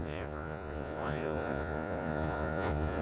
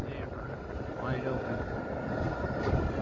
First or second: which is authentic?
second